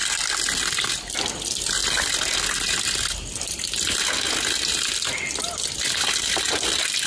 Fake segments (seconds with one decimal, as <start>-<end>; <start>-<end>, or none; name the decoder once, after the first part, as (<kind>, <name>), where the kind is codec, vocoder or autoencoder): none